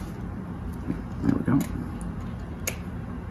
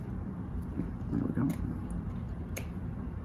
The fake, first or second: second